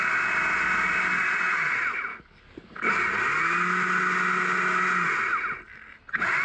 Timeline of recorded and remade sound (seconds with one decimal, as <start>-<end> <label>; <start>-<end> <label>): 0.0-2.1 recorded; 2.1-2.9 remade; 2.9-6.4 recorded